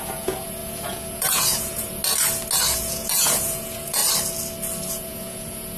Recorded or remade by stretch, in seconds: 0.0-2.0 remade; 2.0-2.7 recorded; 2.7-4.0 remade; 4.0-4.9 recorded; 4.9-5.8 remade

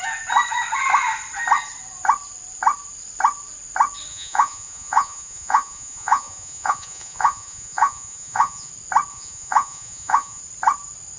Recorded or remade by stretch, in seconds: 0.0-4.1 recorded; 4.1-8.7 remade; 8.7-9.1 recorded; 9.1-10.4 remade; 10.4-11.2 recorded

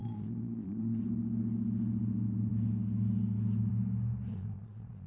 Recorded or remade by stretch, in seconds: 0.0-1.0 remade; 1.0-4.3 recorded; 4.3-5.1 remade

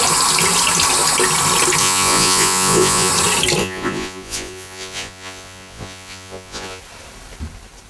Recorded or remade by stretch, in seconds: 0.0-1.8 recorded; 1.8-3.1 remade; 3.1-3.6 recorded; 3.6-6.8 remade; 6.8-7.9 recorded

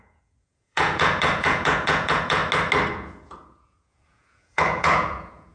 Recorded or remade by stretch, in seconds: 0.0-2.4 remade; 2.4-2.9 recorded; 2.9-5.5 remade

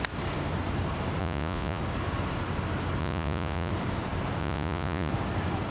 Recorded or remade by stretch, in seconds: 0.0-1.2 recorded; 1.2-1.8 remade; 1.8-3.0 recorded; 3.0-3.7 remade; 3.7-4.4 recorded; 4.4-5.1 remade; 5.1-5.7 recorded

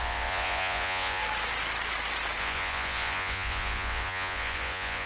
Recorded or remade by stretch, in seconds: 0.0-1.2 remade; 1.2-2.4 recorded; 2.4-5.1 remade